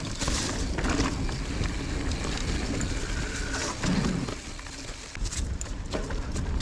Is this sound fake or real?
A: real